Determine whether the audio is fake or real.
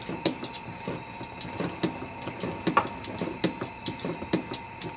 real